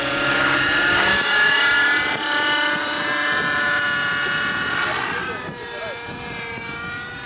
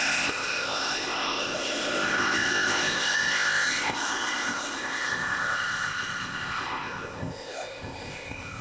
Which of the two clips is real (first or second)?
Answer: first